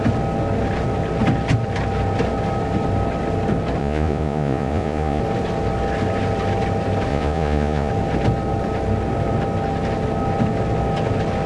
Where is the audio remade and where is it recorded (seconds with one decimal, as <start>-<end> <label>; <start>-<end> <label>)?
0.0-3.8 recorded; 3.8-5.2 remade; 5.2-7.1 recorded; 7.1-7.9 remade; 7.9-11.5 recorded